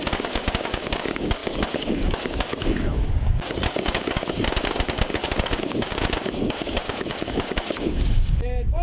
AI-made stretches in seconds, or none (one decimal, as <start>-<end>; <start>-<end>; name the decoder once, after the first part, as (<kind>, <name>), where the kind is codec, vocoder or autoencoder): 0.0-8.8 (codec, DAC)